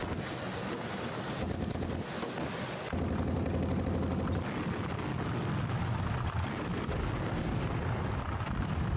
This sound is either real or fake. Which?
real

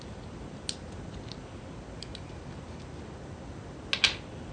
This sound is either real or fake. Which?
real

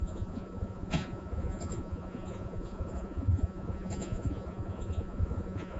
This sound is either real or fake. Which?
fake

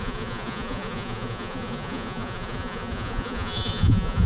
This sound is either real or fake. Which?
fake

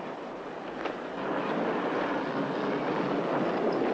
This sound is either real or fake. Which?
real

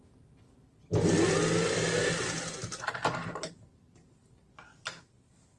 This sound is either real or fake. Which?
real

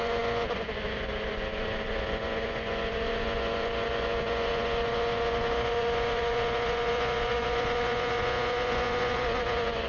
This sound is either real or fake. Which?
fake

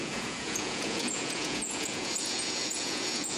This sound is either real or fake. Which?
fake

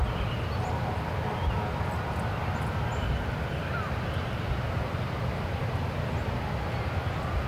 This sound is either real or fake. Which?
real